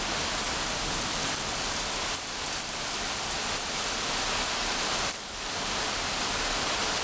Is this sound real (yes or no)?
no